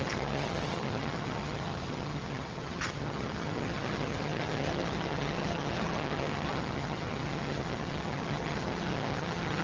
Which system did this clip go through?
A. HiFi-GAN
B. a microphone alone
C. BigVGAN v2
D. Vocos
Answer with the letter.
A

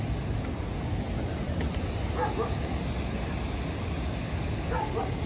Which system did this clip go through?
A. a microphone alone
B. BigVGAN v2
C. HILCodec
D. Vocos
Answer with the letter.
A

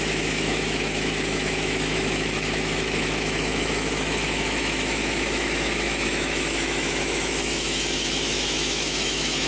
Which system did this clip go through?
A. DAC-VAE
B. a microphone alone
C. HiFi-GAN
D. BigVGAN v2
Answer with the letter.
A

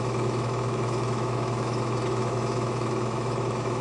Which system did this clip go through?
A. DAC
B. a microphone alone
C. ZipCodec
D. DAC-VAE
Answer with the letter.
D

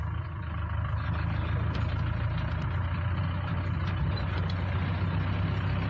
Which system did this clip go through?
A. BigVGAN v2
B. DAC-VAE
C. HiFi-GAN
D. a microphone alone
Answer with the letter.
D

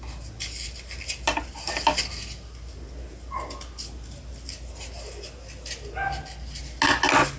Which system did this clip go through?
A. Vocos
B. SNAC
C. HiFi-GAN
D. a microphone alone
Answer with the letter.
D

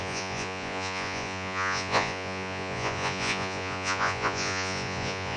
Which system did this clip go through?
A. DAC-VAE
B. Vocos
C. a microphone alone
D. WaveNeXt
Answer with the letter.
B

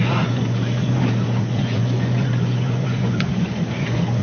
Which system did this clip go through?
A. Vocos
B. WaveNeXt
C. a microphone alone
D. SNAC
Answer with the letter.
A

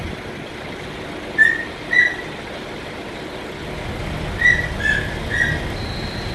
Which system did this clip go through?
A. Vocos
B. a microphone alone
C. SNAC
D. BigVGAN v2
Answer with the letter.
B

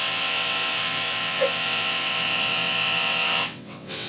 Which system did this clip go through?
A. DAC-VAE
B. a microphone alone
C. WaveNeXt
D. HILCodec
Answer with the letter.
C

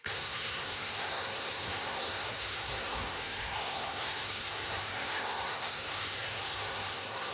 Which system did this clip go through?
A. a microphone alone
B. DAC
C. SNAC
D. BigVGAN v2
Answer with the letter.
C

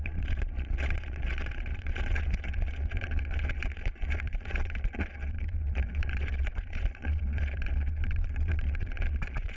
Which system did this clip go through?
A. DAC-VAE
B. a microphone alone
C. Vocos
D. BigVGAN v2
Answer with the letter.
C